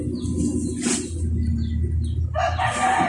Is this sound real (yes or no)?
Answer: yes